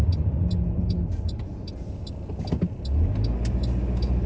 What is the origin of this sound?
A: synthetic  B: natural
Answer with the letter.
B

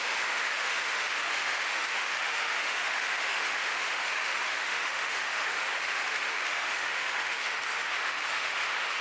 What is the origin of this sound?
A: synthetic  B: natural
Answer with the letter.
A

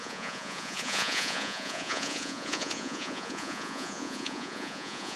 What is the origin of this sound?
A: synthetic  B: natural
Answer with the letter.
A